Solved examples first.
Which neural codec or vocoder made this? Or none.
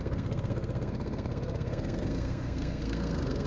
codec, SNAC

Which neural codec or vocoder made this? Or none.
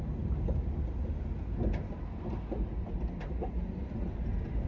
none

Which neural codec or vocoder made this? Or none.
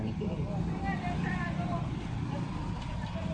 none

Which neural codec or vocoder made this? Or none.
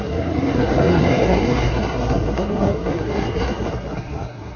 codec, SNAC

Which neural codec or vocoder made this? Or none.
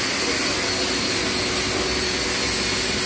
none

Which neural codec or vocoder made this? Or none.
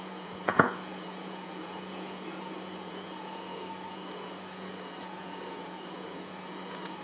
vocoder, Vocos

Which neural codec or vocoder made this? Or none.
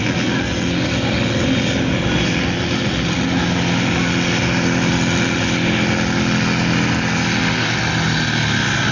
none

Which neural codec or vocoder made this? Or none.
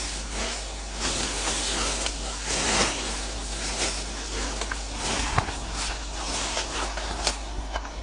codec, SNAC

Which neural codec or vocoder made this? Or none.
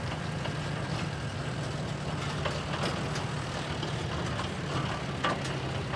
none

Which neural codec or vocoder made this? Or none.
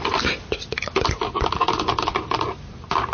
none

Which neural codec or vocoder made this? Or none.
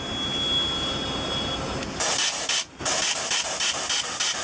none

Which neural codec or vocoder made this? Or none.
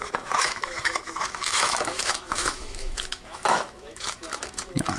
autoencoder, DAC-VAE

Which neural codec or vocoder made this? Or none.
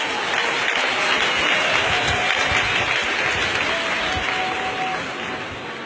none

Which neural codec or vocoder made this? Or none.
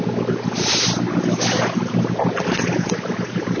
none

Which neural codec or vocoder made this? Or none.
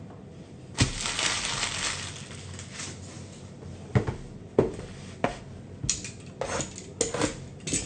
none